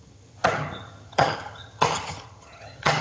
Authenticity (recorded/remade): remade